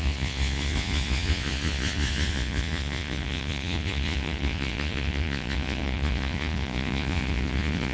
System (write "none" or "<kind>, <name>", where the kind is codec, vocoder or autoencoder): vocoder, Vocos